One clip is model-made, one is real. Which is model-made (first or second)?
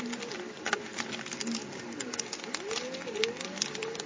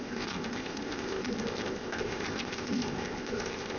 second